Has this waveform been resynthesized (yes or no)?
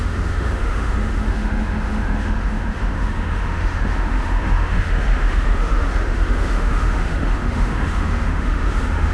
yes